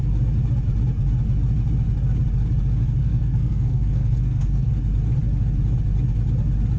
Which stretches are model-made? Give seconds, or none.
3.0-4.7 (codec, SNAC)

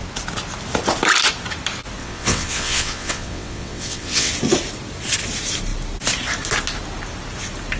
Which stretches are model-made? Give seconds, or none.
2.0-4.3 (vocoder, WaveNeXt)

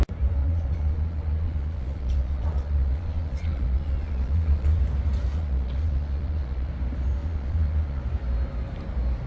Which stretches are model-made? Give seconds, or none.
0.4-4.8 (vocoder, Vocos); 5.3-6.7; 7.2-8.0